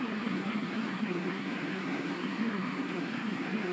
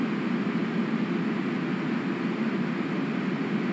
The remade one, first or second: first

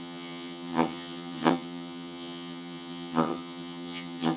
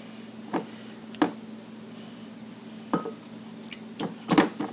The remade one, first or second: first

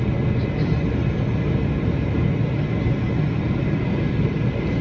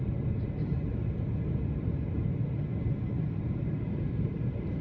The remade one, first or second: second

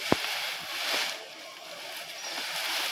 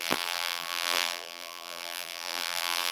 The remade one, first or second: second